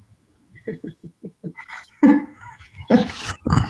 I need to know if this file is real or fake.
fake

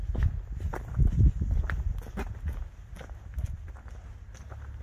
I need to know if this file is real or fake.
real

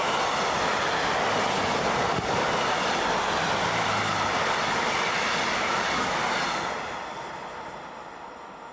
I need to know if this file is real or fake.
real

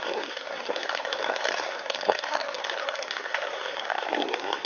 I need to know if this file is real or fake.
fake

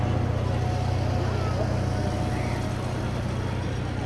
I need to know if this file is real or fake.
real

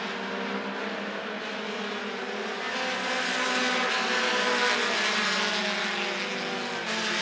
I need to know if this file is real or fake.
real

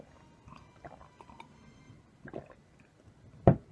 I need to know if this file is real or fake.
real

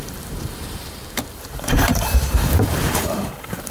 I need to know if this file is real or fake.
fake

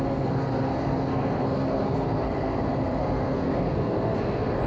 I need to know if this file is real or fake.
fake